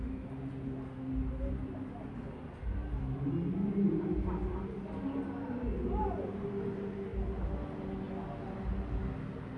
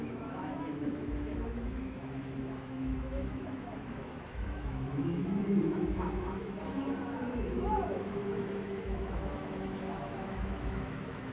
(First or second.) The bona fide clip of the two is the first